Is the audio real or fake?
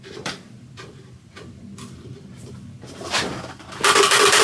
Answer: fake